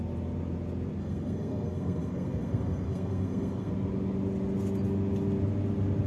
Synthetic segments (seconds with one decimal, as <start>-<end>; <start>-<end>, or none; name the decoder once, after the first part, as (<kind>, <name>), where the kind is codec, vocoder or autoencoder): 1.0-3.7 (codec, SNAC)